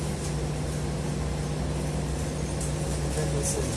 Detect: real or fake real